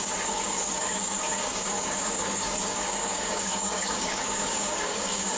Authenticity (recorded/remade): remade